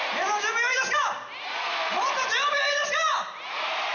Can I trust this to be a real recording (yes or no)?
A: yes